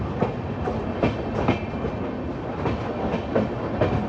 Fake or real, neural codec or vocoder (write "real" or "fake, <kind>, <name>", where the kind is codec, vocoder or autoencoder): real